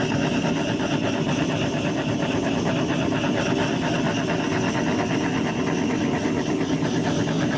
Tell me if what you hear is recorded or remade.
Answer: recorded